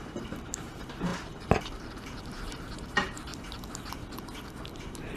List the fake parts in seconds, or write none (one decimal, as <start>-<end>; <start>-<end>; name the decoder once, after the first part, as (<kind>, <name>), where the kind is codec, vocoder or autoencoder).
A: 0.0-1.1 (vocoder, BigVGAN v2); 1.6-3.3